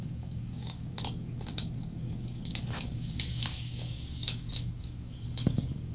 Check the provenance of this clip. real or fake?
fake